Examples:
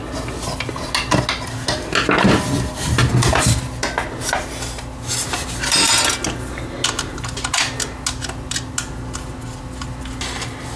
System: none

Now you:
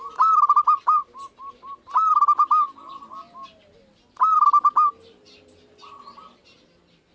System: none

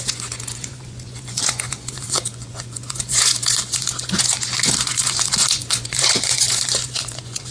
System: vocoder, Vocos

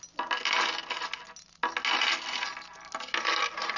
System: none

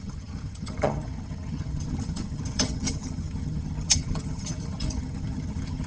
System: vocoder, HiFi-GAN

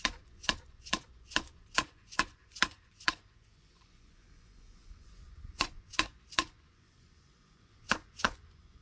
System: vocoder, Vocos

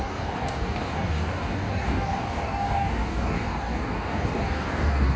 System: codec, DAC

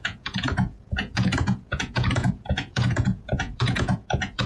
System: vocoder, Vocos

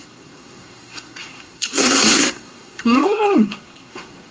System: codec, SNAC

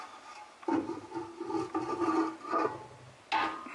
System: none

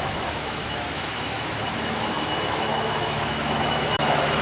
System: autoencoder, DAC-VAE